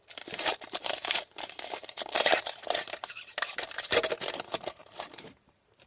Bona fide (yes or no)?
no